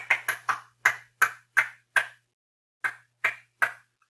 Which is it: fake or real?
real